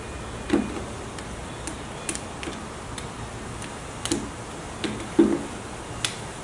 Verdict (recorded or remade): recorded